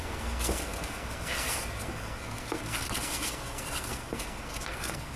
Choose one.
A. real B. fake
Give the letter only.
B